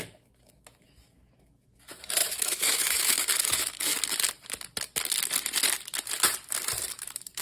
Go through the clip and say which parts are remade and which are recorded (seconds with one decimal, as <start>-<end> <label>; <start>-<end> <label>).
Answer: 0.0-3.9 remade; 3.9-6.9 recorded; 6.9-7.4 remade